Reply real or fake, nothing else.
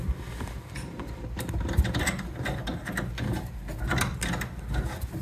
real